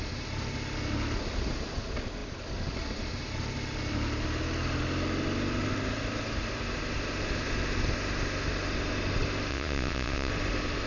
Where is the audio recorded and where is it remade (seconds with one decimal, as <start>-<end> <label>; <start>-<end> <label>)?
0.0-9.5 recorded; 9.5-10.3 remade; 10.3-10.9 recorded